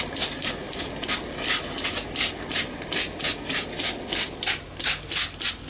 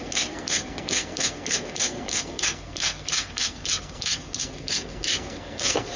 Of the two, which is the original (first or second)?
first